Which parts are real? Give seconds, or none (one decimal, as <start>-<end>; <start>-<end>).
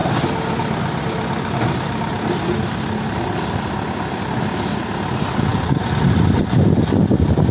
0.0-4.2; 5.5-6.4